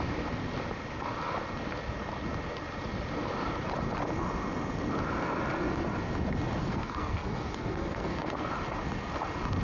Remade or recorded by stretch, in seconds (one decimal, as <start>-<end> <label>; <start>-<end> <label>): 0.0-6.6 recorded; 6.6-8.5 remade; 8.5-9.6 recorded